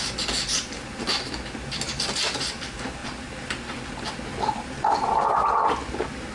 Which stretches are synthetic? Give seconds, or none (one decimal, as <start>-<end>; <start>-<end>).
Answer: none